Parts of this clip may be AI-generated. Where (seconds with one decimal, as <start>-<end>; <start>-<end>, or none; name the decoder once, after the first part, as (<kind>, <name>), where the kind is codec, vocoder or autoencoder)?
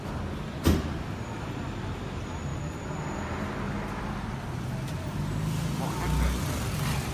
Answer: none